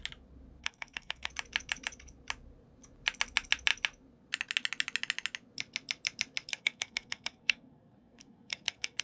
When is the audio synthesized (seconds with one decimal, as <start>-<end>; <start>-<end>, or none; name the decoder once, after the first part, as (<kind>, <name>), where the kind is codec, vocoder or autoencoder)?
0.6-1.3 (codec, SNAC); 6.5-9.0